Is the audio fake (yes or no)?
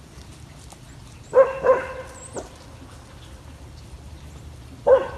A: no